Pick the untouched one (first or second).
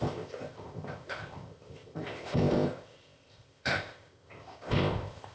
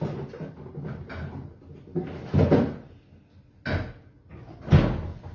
second